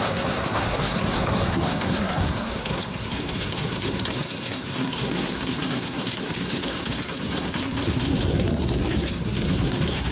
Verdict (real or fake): fake